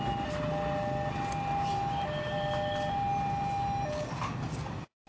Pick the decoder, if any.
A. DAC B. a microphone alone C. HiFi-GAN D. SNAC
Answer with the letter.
B